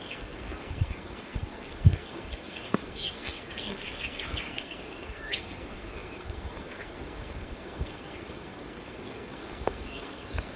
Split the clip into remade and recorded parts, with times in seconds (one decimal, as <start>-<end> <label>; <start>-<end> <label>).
0.0-10.6 remade